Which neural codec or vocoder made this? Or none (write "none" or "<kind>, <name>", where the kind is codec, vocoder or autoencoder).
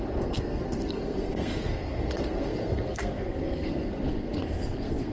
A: codec, SNAC